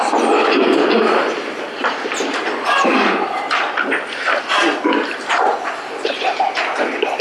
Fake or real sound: real